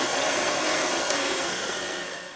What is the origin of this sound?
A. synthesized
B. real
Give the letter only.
A